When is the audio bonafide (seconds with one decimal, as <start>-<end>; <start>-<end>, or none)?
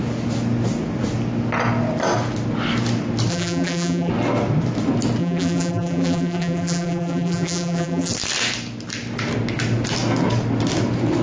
0.0-3.3; 4.1-5.2; 8.1-11.2